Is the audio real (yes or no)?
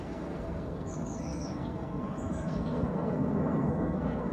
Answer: no